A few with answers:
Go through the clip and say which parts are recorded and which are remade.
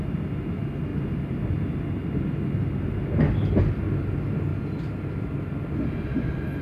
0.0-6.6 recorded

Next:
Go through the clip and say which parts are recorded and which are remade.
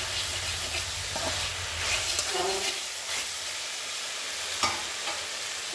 0.0-5.7 recorded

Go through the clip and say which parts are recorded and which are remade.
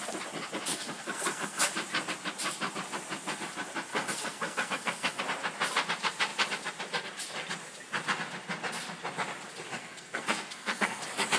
0.0-0.7 recorded; 0.7-1.7 remade; 1.7-3.9 recorded; 3.9-5.2 remade; 5.2-9.8 recorded; 9.8-11.0 remade; 11.0-11.4 recorded